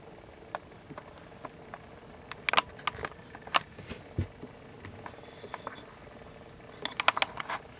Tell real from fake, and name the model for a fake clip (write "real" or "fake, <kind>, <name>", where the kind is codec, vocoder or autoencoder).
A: real